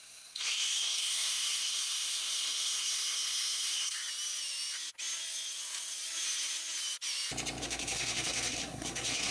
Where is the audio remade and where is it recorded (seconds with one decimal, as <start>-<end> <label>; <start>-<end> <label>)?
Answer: 0.0-4.0 remade; 4.0-7.6 recorded; 7.6-9.3 remade